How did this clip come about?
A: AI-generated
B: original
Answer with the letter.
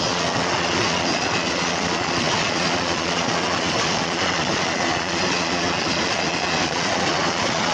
A